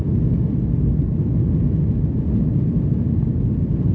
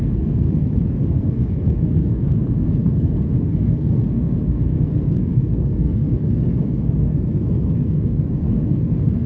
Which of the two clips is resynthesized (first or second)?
second